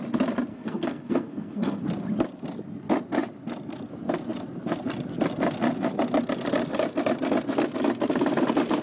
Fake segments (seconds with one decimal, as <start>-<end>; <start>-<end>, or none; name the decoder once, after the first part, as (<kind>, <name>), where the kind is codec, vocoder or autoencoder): 0.5-1.8 (codec, SNAC)